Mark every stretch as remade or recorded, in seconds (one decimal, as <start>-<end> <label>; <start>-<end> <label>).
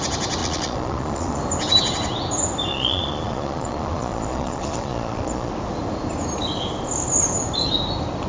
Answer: 0.0-0.4 recorded; 0.4-1.4 remade; 1.4-2.7 recorded; 2.7-5.5 remade; 5.5-8.3 recorded